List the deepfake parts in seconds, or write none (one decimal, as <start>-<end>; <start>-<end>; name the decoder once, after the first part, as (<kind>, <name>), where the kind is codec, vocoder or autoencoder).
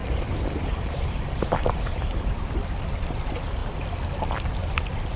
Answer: 0.0-2.5 (vocoder, BigVGAN v2)